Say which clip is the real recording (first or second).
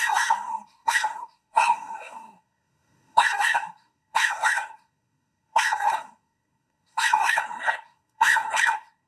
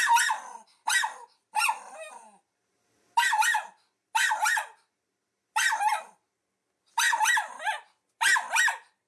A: second